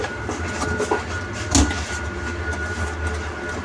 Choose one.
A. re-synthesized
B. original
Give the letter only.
B